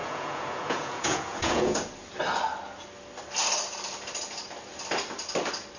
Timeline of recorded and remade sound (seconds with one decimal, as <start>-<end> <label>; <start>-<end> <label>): 0.0-1.8 remade; 1.8-5.8 recorded